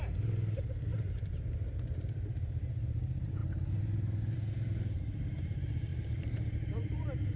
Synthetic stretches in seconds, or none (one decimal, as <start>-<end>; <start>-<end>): 0.0-7.4